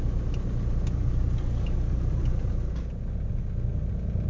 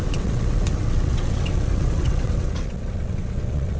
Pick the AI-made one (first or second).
second